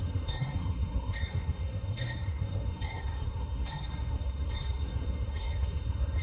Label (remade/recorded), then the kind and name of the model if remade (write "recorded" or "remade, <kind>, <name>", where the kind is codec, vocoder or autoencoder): remade, codec, SNAC